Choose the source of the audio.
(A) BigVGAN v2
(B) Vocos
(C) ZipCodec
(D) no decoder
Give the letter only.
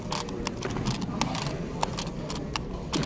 D